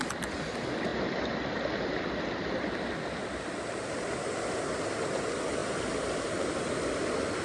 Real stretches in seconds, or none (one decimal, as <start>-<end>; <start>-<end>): 0.0-7.4